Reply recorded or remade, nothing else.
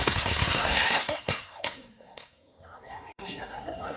remade